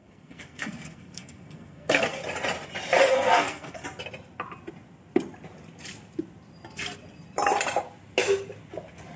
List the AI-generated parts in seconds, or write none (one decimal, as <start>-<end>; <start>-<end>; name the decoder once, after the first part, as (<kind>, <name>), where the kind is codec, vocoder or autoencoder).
0.0-2.2 (codec, SNAC); 3.1-3.8